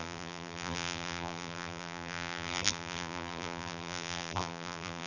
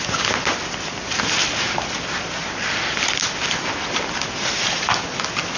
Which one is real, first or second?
second